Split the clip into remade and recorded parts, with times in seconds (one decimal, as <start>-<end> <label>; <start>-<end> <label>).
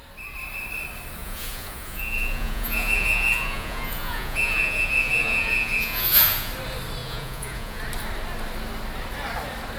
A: 0.0-1.2 recorded; 1.2-6.5 remade; 6.5-7.0 recorded; 7.0-7.8 remade; 7.8-9.8 recorded